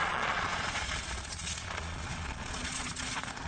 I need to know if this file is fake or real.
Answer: fake